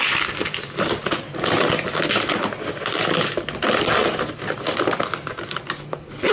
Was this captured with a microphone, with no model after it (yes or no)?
yes